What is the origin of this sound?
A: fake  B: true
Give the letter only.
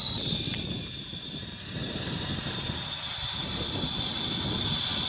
B